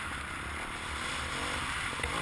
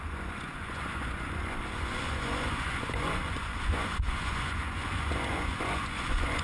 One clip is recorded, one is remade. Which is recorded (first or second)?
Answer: first